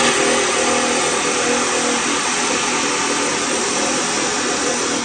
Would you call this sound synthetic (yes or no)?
no